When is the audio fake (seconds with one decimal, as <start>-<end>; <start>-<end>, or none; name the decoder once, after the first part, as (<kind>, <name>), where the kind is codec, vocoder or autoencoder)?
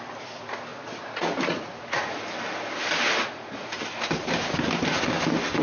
0.7-2.2 (vocoder, Vocos); 3.2-3.8